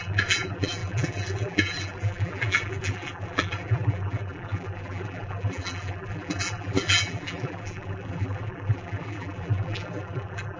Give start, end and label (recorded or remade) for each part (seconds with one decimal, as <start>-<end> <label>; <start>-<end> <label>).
0.0-10.6 remade